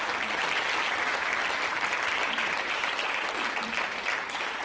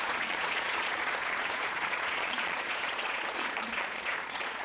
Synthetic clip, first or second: second